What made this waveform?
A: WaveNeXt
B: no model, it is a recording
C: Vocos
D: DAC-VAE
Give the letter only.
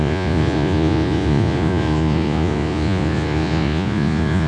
C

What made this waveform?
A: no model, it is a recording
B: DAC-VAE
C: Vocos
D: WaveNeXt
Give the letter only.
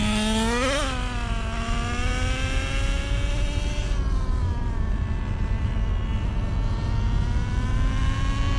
A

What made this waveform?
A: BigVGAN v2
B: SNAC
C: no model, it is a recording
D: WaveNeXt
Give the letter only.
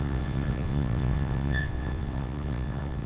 D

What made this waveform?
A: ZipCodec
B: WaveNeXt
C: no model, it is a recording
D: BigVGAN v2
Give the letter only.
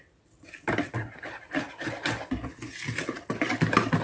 C